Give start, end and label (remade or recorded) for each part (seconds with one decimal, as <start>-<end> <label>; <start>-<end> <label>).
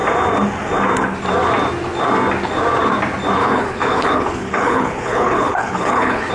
0.0-3.4 recorded; 3.4-6.3 remade